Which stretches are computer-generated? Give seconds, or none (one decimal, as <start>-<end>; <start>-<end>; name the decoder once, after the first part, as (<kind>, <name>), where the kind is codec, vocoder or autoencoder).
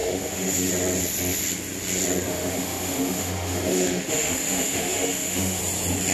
0.0-0.7 (autoencoder, DAC-VAE); 2.3-5.6